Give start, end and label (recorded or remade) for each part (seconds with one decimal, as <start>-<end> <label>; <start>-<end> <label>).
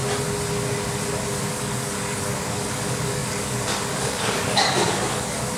0.0-1.4 recorded; 1.4-5.6 remade